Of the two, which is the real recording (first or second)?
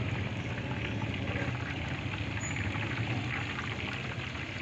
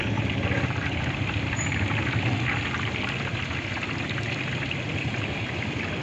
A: first